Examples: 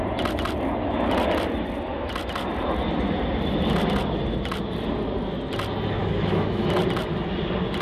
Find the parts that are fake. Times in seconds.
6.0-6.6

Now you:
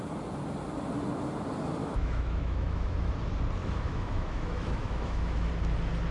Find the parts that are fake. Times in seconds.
1.8-3.1; 3.6-5.5

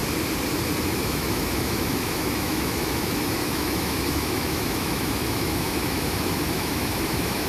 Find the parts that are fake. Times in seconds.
0.8-7.5

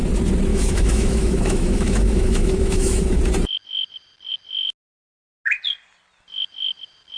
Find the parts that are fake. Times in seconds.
0.5-3.2

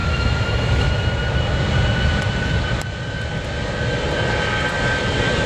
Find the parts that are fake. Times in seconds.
0.0-0.9

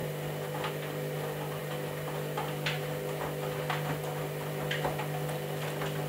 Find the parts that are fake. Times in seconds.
none